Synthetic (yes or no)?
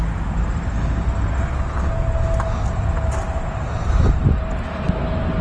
no